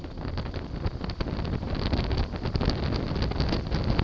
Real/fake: real